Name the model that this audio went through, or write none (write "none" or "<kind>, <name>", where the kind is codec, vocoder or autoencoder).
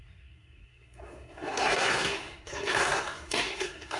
codec, SNAC